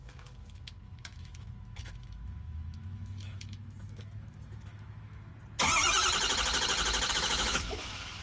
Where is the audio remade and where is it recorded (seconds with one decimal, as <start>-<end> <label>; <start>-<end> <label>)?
0.0-5.3 remade; 5.3-7.1 recorded; 7.1-8.2 remade